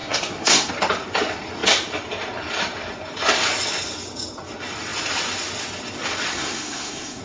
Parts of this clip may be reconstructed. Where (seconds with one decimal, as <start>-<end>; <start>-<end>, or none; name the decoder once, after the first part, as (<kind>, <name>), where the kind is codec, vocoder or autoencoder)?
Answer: 0.0-0.7 (codec, SNAC); 6.3-7.2